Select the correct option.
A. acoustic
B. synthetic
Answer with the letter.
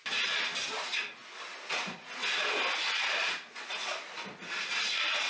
A